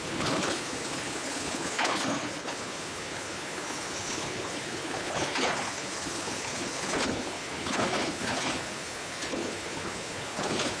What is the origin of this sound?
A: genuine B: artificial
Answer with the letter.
B